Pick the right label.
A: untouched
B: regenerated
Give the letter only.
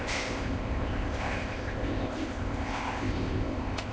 B